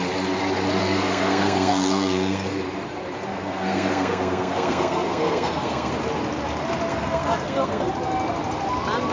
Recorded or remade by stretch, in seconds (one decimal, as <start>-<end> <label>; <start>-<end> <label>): 0.0-0.8 recorded; 0.8-2.6 remade; 2.6-3.3 recorded; 3.3-5.9 remade; 5.9-6.9 recorded; 6.9-7.9 remade; 7.9-9.1 recorded